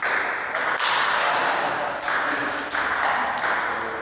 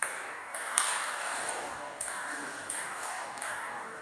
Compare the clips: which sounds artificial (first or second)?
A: second